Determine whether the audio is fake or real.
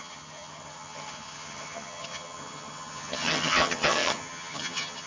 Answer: fake